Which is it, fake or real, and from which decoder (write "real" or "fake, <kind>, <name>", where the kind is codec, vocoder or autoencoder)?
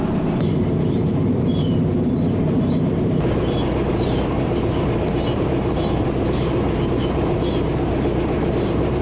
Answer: fake, vocoder, BigVGAN v2